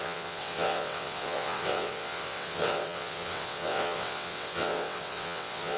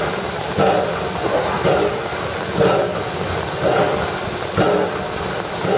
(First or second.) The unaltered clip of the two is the second